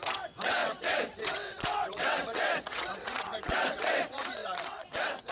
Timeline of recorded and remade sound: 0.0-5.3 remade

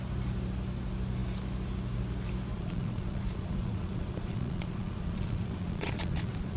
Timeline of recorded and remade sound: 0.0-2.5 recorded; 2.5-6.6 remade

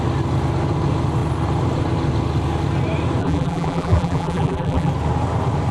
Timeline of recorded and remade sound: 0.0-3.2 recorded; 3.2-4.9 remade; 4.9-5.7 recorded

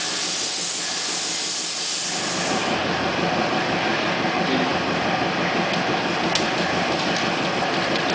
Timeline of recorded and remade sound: 0.0-8.1 recorded

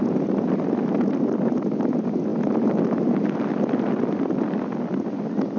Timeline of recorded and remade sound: 0.0-5.6 recorded

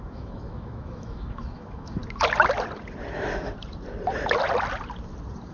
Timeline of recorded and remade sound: 0.0-2.0 remade; 2.0-5.5 recorded

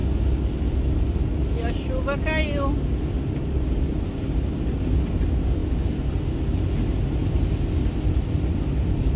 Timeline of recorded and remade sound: 0.0-9.2 recorded

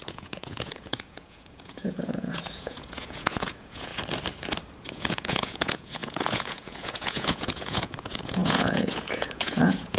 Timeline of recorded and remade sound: 0.0-3.9 remade; 3.9-4.9 recorded; 4.9-10.0 remade